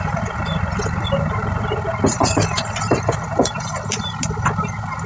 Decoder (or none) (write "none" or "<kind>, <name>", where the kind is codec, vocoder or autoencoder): none